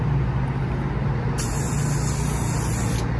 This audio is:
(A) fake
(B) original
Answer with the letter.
B